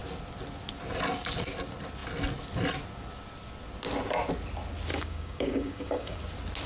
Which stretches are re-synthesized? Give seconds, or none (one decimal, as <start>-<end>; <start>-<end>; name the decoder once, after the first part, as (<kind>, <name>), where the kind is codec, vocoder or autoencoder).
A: 4.9-6.2 (codec, DAC)